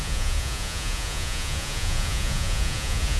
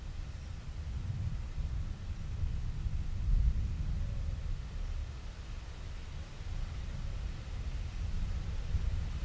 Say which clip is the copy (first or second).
first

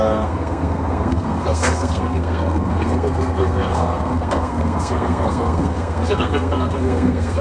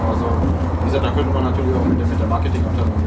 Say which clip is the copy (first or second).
first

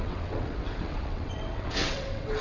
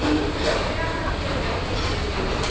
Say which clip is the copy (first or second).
first